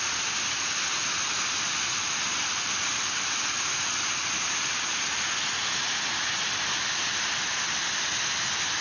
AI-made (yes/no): no